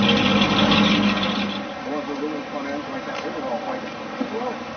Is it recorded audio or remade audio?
recorded